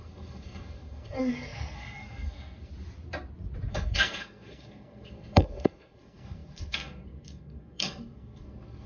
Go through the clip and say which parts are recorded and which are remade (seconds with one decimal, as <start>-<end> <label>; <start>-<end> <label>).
0.0-2.7 remade; 2.7-3.7 recorded; 3.7-8.9 remade